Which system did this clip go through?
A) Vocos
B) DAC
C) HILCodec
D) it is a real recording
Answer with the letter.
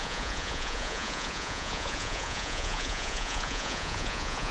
A